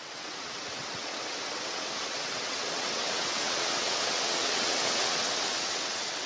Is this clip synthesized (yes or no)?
yes